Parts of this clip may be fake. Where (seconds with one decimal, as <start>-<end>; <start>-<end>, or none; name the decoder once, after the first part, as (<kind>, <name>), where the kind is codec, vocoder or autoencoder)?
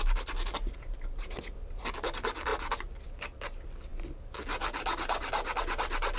none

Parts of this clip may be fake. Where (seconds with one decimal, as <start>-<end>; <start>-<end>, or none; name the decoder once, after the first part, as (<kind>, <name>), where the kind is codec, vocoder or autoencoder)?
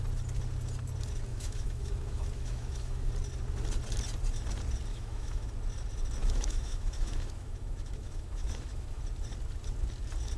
1.3-3.1 (autoencoder, DAC-VAE); 4.9-5.5; 6.2-9.0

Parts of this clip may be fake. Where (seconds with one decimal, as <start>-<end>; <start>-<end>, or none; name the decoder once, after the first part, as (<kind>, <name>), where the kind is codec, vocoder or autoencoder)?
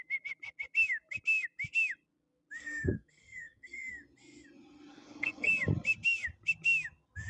2.6-3.9 (codec, SNAC); 4.9-5.5